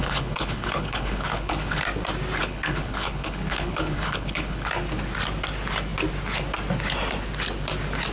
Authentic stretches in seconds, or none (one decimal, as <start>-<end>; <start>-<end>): 1.8-2.4; 4.7-8.1